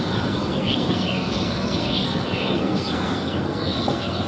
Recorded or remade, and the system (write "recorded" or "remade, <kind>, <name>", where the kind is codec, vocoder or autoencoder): remade, codec, SNAC